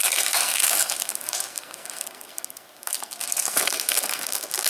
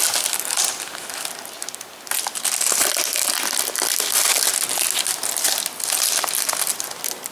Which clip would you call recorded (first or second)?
second